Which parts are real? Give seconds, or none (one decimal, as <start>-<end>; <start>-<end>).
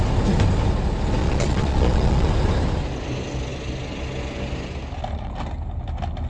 0.0-1.2; 2.3-6.3